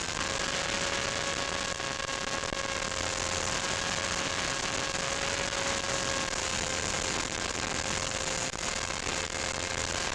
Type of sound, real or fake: real